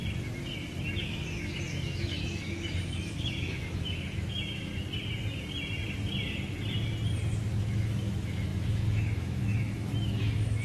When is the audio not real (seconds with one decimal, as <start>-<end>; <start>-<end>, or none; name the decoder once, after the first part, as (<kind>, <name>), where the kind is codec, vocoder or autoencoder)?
1.0-4.7 (autoencoder, DAC-VAE); 7.6-10.6

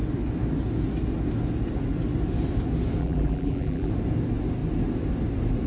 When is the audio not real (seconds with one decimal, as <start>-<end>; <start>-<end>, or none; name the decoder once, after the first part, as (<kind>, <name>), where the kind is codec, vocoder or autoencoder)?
3.0-3.9 (vocoder, BigVGAN v2)

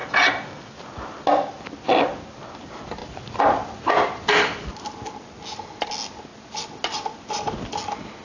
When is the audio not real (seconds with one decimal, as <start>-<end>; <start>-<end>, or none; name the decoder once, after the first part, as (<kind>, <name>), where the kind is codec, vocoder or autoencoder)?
none

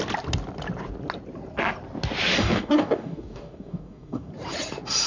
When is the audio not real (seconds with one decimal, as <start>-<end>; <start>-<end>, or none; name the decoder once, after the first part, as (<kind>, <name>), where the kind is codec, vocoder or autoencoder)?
2.3-4.3 (codec, DAC)

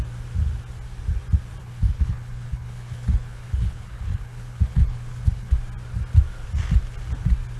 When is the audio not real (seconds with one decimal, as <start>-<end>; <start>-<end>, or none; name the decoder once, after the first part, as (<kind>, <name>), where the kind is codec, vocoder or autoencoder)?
1.6-5.5 (codec, HILCodec)

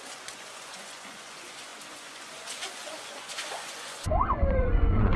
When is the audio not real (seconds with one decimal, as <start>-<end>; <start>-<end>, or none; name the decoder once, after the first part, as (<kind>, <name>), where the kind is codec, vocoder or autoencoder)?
0.0-5.2 (vocoder, Vocos)